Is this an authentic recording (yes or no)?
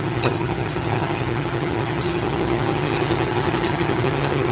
no